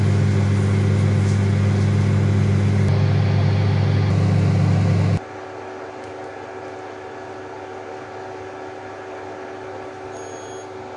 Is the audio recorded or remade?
recorded